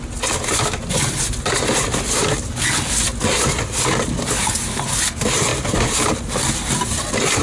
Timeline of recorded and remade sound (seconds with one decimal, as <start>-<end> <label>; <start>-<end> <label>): 0.0-7.4 recorded